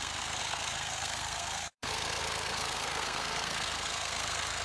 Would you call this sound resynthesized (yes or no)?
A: yes